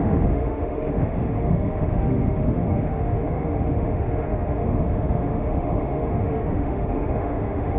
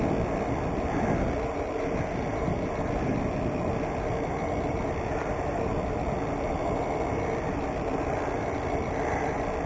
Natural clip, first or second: second